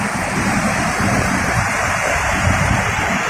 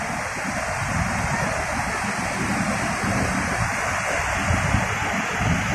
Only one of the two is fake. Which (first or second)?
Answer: first